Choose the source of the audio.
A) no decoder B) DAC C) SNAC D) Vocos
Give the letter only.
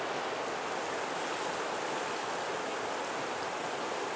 A